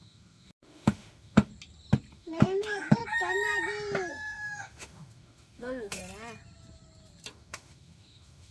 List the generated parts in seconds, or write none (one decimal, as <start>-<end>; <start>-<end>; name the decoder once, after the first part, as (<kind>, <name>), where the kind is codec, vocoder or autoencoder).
0.0-1.5 (autoencoder, DAC-VAE); 2.1-3.0; 4.1-6.0; 7.3-8.5